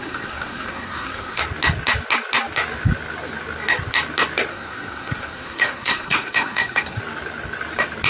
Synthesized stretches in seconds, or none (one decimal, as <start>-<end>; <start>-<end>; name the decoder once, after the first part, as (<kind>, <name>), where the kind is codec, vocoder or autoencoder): 0.0-1.4 (codec, SNAC); 4.5-7.0